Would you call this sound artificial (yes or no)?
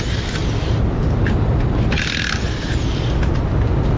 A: no